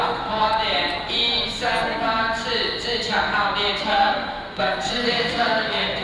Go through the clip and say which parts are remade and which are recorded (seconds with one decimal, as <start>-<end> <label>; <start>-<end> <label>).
0.0-0.4 remade; 0.4-3.8 recorded; 3.8-6.0 remade